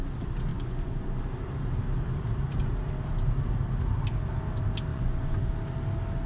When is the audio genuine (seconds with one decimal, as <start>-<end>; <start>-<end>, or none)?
0.0-0.5; 1.2-4.9; 5.5-6.3